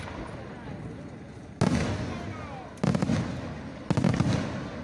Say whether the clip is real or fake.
real